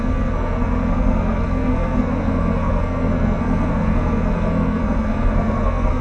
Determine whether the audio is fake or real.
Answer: fake